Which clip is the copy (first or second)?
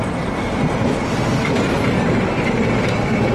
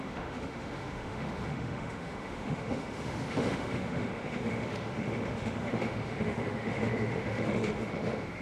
second